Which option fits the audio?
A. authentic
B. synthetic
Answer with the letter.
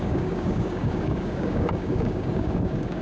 B